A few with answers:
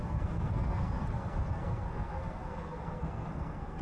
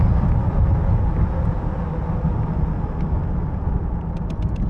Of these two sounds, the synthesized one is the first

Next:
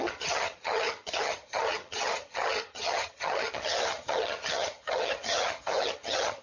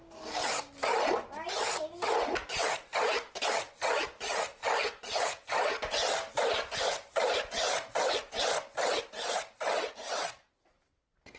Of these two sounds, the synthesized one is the first